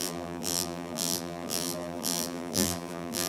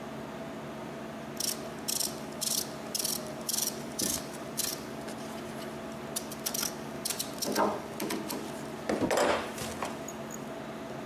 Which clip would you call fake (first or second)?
first